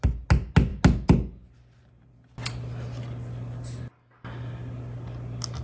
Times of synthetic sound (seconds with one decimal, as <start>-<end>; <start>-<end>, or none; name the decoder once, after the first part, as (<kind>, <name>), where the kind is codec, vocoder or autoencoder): none